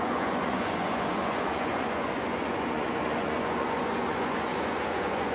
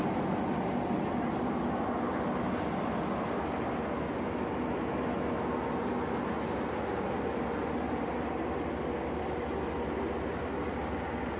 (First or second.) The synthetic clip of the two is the first